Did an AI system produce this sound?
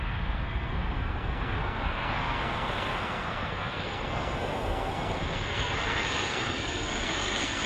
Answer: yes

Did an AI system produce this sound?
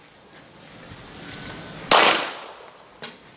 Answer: no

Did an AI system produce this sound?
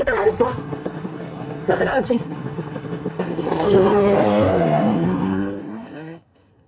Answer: yes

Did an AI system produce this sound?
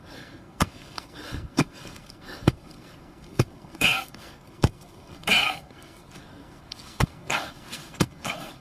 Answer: yes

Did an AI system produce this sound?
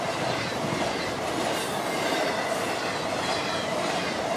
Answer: no